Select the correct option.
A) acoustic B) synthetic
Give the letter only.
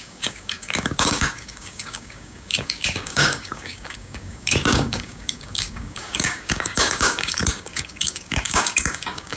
B